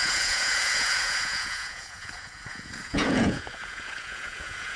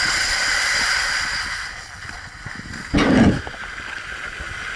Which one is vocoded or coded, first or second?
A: first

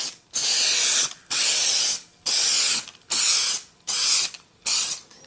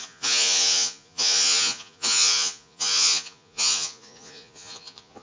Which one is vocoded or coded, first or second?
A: second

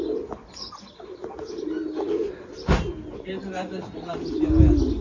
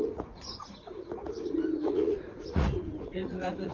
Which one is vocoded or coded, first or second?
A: second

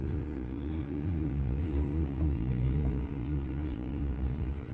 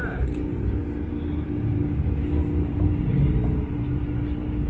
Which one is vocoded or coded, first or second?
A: first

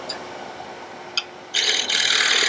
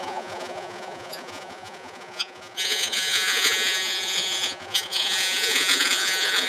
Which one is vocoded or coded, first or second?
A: second